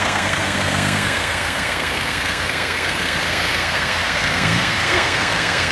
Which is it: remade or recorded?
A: remade